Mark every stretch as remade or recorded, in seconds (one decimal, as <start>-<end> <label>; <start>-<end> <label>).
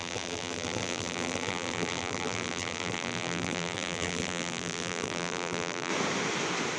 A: 0.0-5.9 remade; 5.9-6.8 recorded